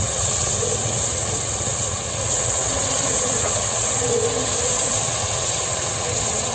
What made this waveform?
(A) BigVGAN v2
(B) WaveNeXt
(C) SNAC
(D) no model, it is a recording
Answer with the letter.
B